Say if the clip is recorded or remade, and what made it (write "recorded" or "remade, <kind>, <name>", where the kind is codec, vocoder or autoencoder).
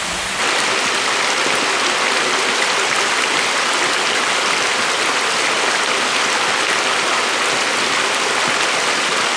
recorded